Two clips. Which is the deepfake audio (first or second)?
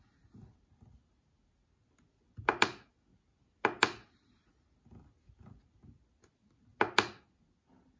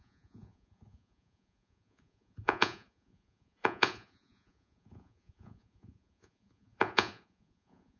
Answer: second